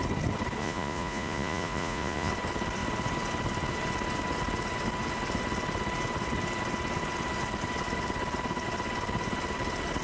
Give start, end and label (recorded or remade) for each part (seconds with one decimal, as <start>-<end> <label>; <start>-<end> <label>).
0.0-0.6 recorded; 0.6-2.3 remade; 2.3-10.0 recorded